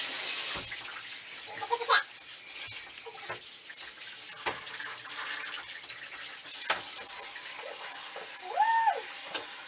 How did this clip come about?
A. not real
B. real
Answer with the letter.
B